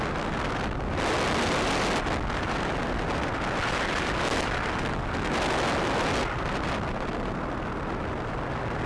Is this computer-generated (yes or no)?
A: no